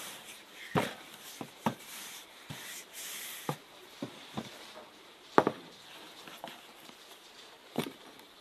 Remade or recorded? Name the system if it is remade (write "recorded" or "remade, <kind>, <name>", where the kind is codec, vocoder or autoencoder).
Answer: remade, vocoder, BigVGAN v2